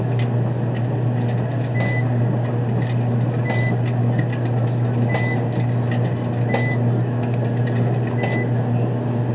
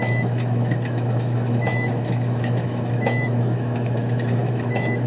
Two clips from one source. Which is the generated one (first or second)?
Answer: second